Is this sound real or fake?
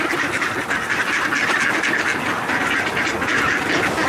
real